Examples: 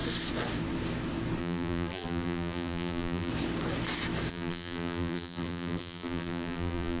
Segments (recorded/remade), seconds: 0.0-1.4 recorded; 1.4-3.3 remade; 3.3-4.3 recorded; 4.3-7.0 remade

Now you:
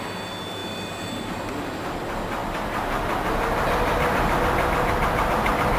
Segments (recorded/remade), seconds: 0.0-2.4 remade; 2.4-5.3 recorded; 5.3-5.8 remade

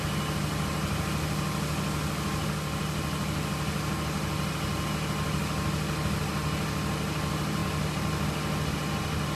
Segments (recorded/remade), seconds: 0.0-9.3 recorded

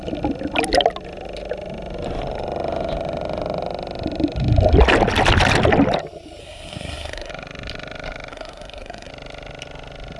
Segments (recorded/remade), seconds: 0.0-6.4 recorded; 6.4-7.3 remade; 7.3-8.3 recorded; 8.3-9.1 remade; 9.1-10.2 recorded

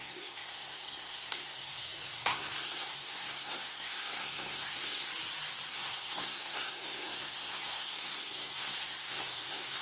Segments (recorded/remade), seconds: 0.0-5.1 remade; 5.1-5.7 recorded; 5.7-9.8 remade

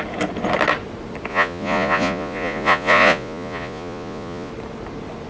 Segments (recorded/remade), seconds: 0.0-1.3 recorded; 1.3-4.5 remade; 4.5-5.3 recorded

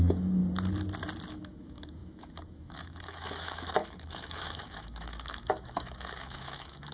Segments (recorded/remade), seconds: 0.0-0.4 remade; 0.4-1.3 recorded; 1.3-6.9 remade

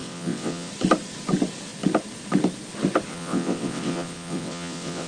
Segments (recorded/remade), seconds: 0.0-0.7 remade; 0.7-3.1 recorded; 3.1-5.1 remade